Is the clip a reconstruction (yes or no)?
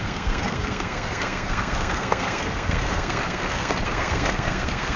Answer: yes